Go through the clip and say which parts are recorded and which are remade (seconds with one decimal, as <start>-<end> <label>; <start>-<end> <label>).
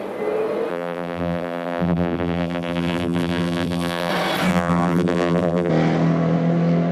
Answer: 0.0-0.7 recorded; 0.7-4.1 remade; 4.1-4.5 recorded; 4.5-5.7 remade; 5.7-6.9 recorded